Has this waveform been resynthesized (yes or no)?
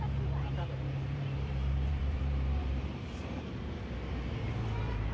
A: yes